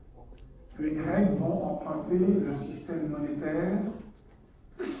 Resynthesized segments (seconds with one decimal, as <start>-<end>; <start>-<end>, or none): 0.0-1.1; 4.1-5.0